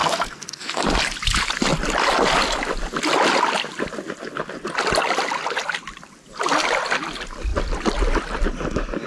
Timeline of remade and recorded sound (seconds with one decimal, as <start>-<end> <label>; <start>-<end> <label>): 0.0-0.8 remade; 0.8-9.1 recorded